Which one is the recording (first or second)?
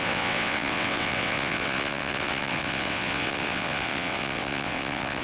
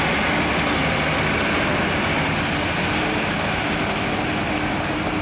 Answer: second